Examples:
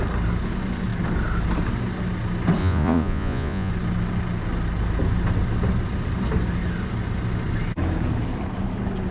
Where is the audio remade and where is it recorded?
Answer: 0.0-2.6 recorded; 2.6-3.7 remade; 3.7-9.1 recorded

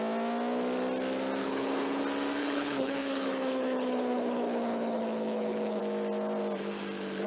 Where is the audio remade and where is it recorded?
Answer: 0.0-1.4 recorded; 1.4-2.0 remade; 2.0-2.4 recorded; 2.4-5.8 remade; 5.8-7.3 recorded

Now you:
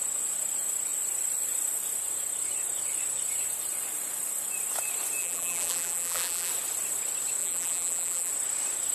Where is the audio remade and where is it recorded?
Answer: 0.0-5.2 recorded; 5.2-6.5 remade; 6.5-7.4 recorded; 7.4-8.3 remade; 8.3-8.9 recorded

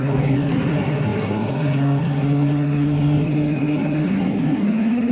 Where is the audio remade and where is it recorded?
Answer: 0.0-5.1 remade

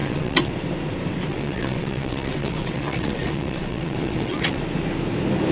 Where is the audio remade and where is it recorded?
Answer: 0.0-0.5 remade; 0.5-1.3 recorded; 1.3-4.6 remade; 4.6-5.5 recorded